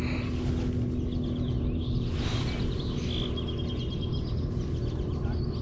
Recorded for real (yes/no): yes